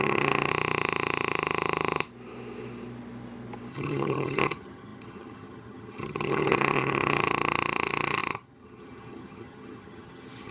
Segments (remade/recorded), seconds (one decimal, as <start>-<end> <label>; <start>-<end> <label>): 0.0-0.5 remade; 0.5-3.7 recorded; 3.7-10.5 remade